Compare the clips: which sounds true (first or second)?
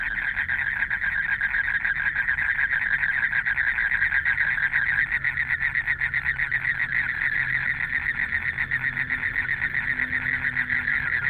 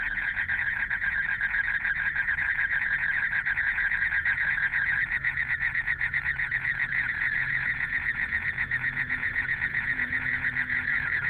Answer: first